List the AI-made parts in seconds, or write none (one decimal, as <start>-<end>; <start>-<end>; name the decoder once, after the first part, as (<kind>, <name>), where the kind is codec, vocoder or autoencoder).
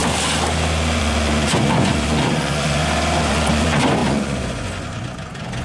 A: 1.0-2.8 (vocoder, Vocos); 3.3-5.6